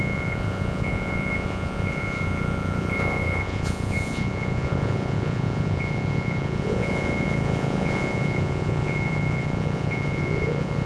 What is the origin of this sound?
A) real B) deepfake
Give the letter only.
B